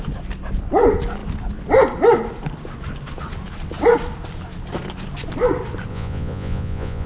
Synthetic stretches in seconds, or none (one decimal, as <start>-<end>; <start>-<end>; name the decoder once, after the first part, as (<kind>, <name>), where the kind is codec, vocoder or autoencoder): 5.9-7.1 (vocoder, Vocos)